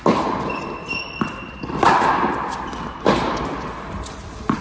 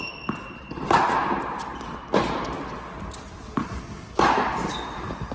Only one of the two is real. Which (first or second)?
second